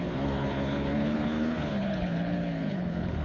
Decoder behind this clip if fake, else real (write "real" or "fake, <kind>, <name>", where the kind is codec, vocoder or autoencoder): fake, codec, HILCodec